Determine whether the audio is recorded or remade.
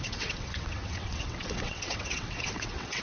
remade